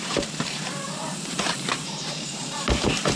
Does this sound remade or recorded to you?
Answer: remade